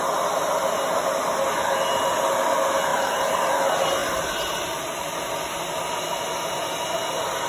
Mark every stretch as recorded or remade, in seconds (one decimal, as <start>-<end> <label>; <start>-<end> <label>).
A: 0.0-2.9 recorded; 2.9-3.6 remade; 3.6-4.0 recorded; 4.0-5.5 remade; 5.5-7.5 recorded